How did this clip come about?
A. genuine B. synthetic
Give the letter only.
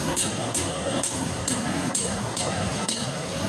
B